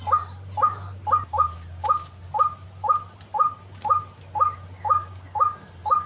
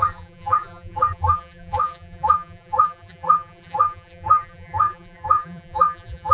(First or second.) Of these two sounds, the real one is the first